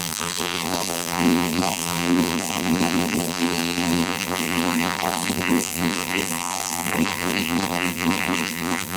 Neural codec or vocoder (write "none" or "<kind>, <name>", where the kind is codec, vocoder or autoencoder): vocoder, BigVGAN v2